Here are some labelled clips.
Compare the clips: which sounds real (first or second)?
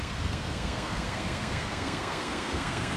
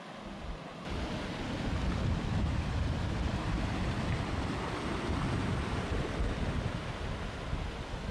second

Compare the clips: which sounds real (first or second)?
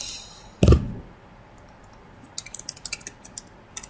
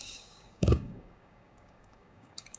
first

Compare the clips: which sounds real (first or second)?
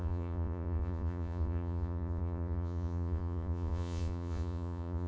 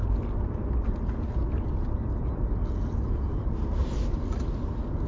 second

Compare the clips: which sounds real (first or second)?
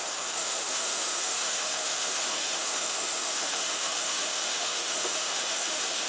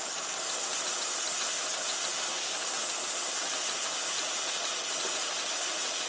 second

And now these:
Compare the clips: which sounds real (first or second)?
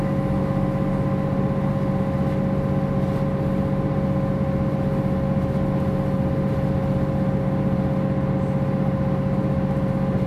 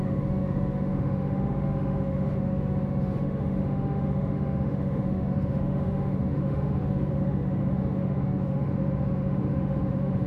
first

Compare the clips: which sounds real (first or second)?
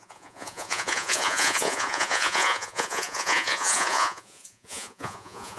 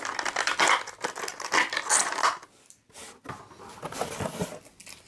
second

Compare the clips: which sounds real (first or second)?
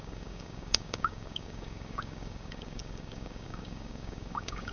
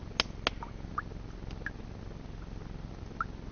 second